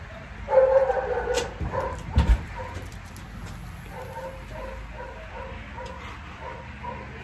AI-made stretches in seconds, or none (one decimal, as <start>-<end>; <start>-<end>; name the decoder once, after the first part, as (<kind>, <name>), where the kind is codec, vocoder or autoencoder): none